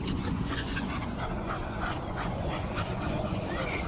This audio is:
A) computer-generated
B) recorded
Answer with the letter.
A